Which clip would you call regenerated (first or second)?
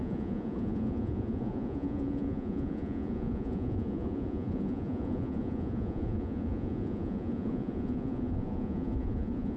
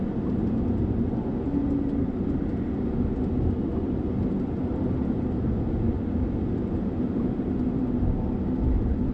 first